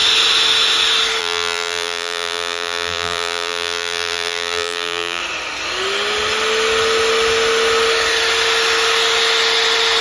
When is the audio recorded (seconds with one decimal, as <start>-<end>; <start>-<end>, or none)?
0.0-1.2; 5.2-10.0